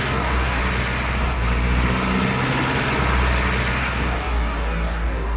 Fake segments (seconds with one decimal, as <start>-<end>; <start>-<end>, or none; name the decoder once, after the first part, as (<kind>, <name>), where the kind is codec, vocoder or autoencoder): 0.0-0.6 (codec, DAC); 3.8-5.4